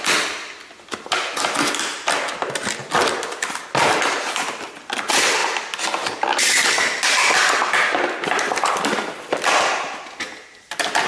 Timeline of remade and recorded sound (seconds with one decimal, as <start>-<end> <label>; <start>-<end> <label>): 0.0-5.4 recorded; 5.4-6.4 remade; 6.4-11.1 recorded